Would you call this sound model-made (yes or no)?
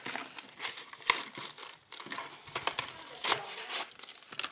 no